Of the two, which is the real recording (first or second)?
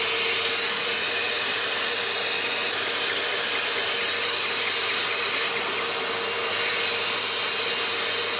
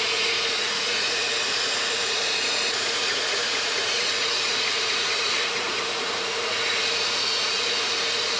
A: first